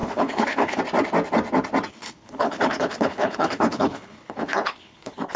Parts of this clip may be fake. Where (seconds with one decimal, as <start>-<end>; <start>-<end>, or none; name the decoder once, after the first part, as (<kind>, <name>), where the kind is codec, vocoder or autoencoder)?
0.0-0.8 (codec, HILCodec); 1.9-5.4